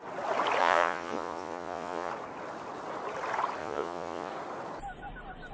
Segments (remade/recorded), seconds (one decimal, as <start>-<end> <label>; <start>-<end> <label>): 0.0-0.6 recorded; 0.6-2.1 remade; 2.1-3.6 recorded; 3.6-4.3 remade; 4.3-5.5 recorded